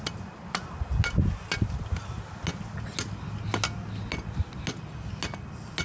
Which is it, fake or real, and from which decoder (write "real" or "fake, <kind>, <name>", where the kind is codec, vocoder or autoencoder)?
real